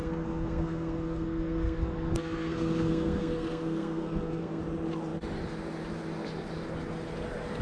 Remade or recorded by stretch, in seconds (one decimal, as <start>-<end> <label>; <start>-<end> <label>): 0.0-4.6 remade; 4.6-7.6 recorded